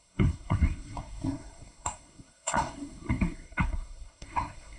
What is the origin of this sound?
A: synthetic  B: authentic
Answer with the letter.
A